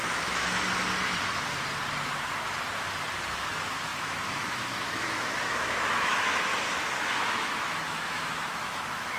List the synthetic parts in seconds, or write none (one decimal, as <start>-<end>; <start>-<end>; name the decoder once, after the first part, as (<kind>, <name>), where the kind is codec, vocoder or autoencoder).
3.3-6.5 (autoencoder, DAC-VAE); 7.0-9.2